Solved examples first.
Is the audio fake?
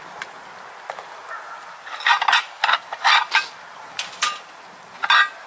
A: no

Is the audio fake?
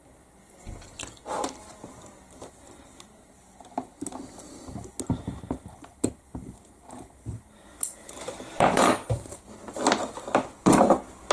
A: no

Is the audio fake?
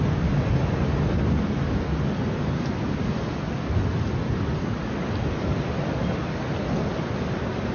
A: no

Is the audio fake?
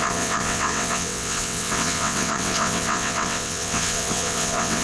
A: yes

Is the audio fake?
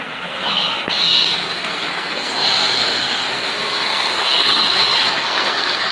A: yes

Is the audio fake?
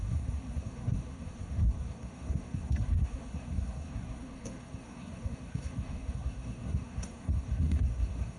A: yes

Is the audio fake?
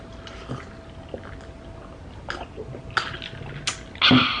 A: no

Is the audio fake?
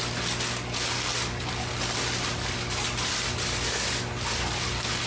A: no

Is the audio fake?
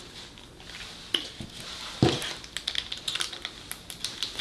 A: no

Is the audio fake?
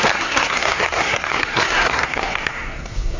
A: yes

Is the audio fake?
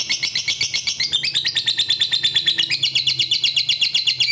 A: no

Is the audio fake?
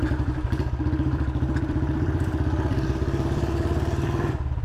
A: yes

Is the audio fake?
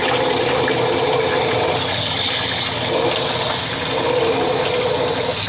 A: no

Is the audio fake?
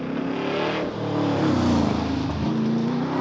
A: no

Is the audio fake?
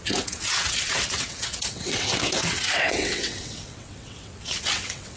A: yes